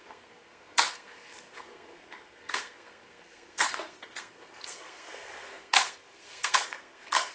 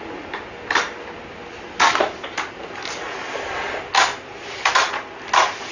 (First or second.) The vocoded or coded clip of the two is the first